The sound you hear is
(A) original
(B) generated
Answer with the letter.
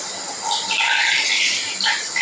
A